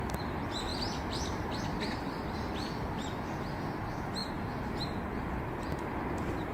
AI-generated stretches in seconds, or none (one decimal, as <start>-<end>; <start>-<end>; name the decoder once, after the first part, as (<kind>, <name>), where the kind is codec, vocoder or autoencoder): 0.7-2.3 (vocoder, BigVGAN v2); 4.2-4.7